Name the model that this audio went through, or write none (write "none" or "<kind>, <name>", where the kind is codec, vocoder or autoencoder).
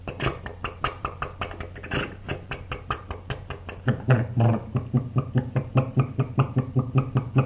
vocoder, BigVGAN v2